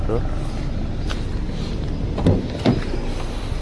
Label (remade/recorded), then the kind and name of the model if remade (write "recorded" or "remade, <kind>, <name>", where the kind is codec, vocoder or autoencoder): recorded